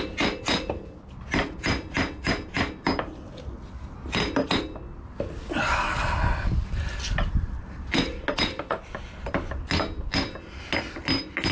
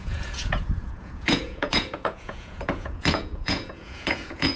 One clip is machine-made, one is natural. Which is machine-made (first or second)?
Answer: second